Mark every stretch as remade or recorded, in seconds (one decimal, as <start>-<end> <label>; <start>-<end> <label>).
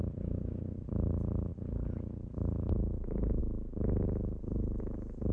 0.0-5.3 recorded